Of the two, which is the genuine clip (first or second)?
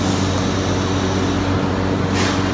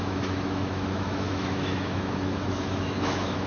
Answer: first